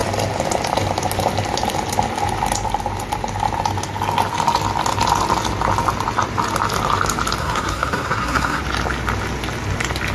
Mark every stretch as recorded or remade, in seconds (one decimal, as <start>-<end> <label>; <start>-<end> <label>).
0.0-7.4 recorded; 7.4-8.6 remade; 8.6-10.1 recorded